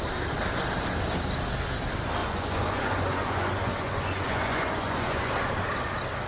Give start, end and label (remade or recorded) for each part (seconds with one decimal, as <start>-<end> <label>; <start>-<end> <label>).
0.0-2.2 recorded; 2.2-5.3 remade; 5.3-6.3 recorded